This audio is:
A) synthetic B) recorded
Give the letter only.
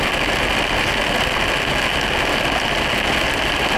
B